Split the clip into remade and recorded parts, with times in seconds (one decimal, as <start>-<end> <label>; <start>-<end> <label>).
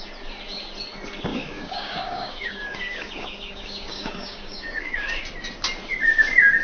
0.0-1.3 recorded; 1.3-5.2 remade; 5.2-6.6 recorded